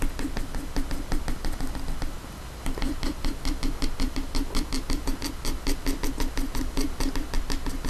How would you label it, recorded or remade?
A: recorded